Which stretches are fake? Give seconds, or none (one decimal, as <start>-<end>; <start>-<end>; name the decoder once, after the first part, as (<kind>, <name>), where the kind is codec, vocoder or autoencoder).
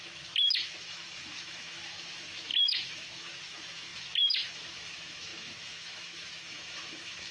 0.0-7.3 (autoencoder, DAC-VAE)